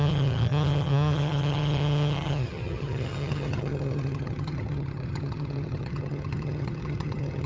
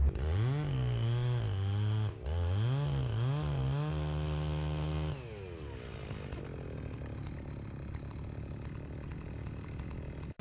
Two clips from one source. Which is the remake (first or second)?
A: first